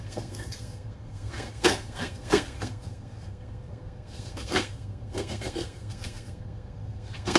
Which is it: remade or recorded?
remade